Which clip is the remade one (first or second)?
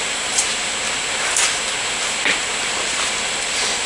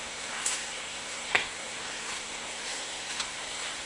second